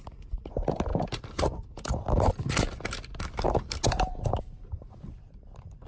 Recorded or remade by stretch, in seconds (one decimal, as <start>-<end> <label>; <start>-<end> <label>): 0.0-5.9 recorded